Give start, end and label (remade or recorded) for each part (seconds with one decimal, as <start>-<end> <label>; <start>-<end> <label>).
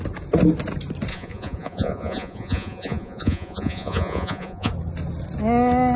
0.0-1.1 recorded; 1.1-4.7 remade; 4.7-6.0 recorded